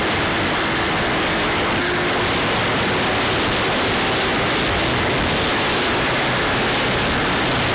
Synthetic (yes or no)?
no